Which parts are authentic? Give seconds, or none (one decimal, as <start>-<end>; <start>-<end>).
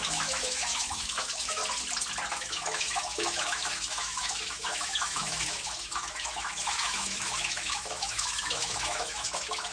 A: 1.6-2.3